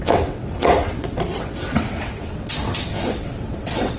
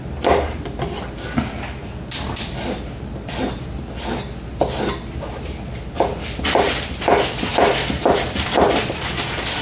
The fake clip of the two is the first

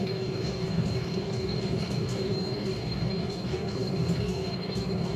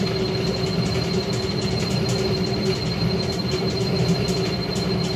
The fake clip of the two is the first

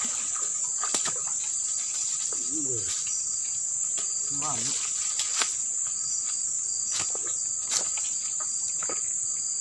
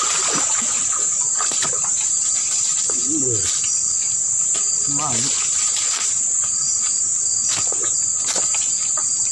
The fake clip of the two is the second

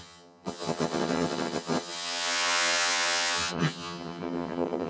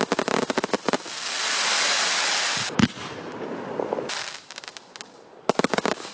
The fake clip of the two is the first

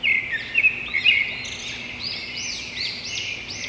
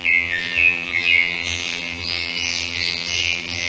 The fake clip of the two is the second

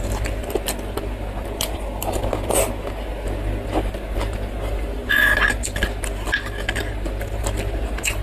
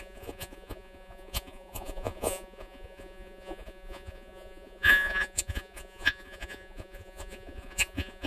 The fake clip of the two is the second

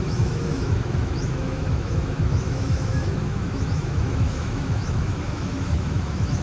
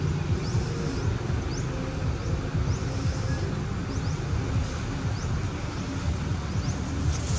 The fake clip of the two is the first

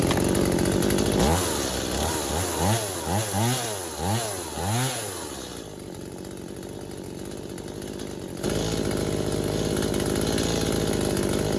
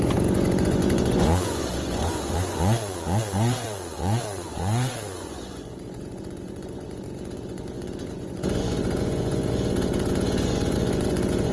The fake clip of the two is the second